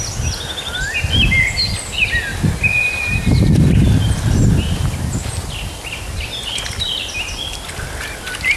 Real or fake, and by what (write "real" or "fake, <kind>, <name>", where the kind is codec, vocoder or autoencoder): real